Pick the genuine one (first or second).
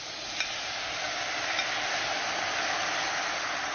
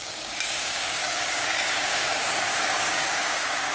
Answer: first